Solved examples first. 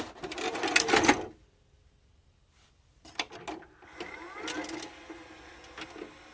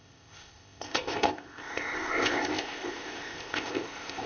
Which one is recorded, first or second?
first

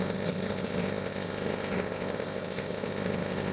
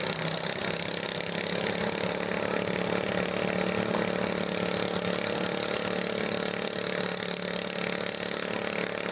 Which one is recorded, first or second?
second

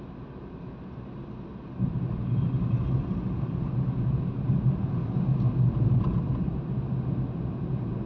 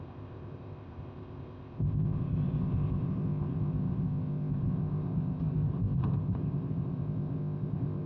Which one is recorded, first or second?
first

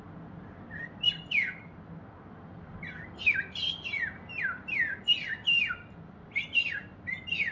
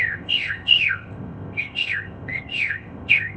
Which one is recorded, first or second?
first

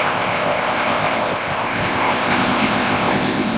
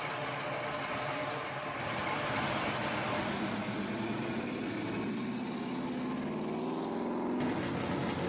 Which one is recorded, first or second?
second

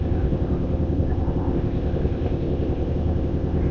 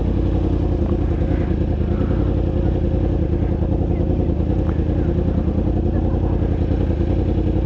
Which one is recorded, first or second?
second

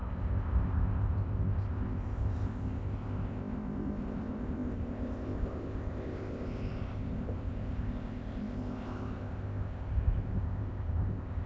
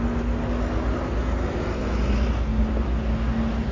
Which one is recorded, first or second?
second